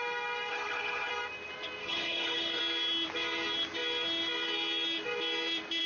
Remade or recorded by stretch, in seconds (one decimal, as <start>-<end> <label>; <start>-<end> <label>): 0.0-0.5 recorded; 0.5-1.1 remade; 1.1-1.8 recorded; 1.8-2.6 remade; 2.6-5.9 recorded